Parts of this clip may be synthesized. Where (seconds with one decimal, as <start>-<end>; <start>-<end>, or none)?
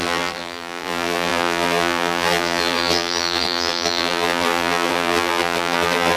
0.0-6.2